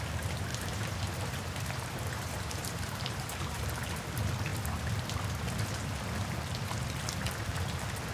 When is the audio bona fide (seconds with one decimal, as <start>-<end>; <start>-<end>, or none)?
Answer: 0.0-0.5; 3.6-8.1